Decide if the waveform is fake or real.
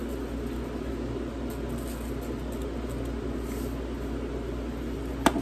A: real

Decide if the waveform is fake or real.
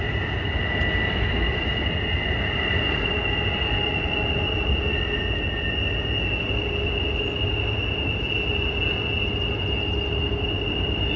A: real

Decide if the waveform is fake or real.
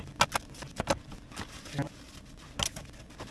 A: real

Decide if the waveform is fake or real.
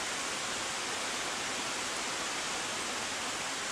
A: real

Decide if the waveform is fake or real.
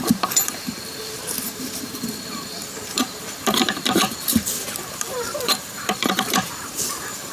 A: fake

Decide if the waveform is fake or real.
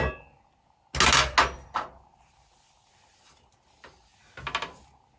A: real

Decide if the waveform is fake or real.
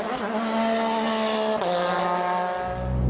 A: real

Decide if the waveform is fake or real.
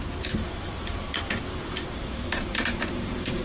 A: fake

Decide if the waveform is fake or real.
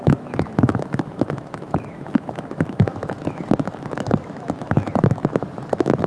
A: fake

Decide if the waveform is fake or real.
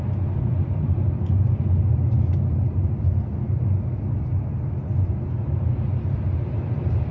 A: real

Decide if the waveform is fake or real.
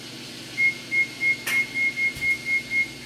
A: real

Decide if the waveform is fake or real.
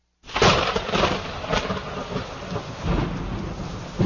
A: real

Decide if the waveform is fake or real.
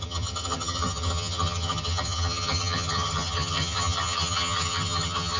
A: fake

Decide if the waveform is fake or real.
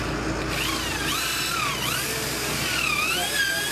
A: real